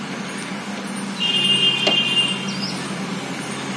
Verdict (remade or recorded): recorded